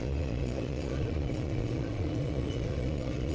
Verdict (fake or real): fake